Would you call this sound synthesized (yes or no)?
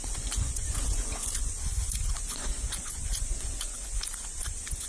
yes